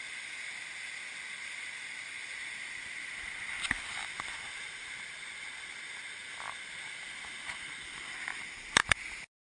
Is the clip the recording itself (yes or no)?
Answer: yes